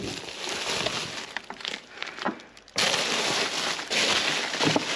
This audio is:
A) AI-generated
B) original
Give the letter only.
B